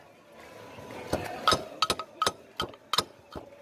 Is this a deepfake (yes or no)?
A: no